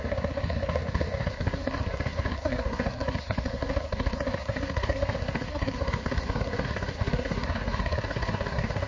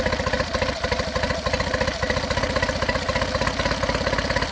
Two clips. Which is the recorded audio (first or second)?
second